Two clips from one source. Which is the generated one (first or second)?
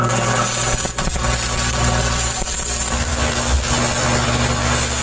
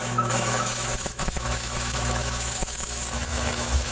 second